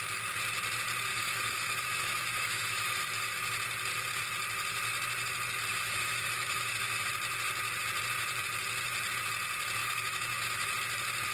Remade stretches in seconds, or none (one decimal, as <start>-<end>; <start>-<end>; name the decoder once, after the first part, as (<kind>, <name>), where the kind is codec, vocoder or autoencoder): 1.1-3.0 (autoencoder, DAC-VAE); 5.7-7.1; 9.8-10.7